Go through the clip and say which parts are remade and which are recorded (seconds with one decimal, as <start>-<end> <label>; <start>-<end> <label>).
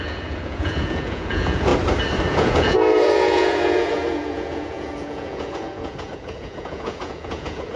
0.0-1.7 remade; 1.7-2.3 recorded; 2.3-7.8 remade